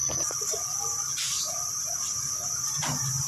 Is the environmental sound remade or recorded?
recorded